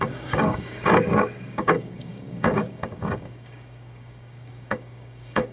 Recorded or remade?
remade